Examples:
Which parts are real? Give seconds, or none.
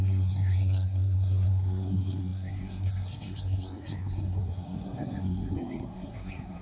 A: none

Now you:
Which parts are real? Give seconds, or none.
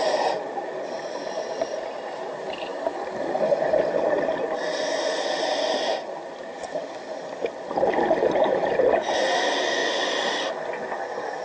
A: 0.0-6.4; 7.4-11.4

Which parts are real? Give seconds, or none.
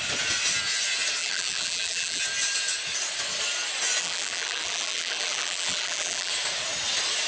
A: 0.0-1.2; 2.2-4.0; 6.3-7.3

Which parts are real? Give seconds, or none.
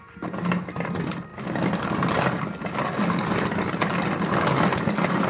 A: 0.0-5.3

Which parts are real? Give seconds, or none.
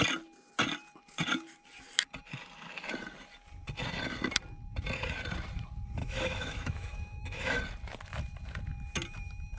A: 0.0-6.0; 7.6-9.6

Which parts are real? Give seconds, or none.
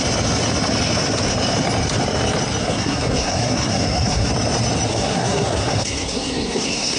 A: 0.0-2.6; 4.3-4.9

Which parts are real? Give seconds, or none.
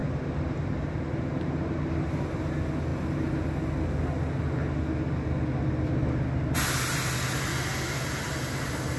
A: 0.0-9.0